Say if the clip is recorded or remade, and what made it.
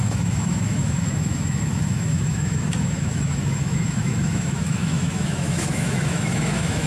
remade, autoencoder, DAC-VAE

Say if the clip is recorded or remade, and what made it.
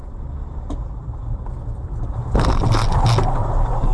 recorded